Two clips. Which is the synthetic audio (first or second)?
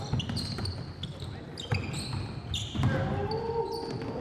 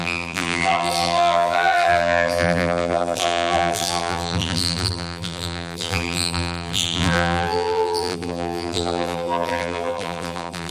second